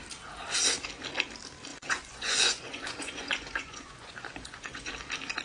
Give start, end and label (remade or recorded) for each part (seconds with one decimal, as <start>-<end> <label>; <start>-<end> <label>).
0.0-1.7 recorded; 1.7-4.9 remade; 4.9-5.4 recorded